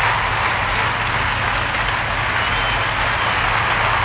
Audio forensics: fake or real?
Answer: real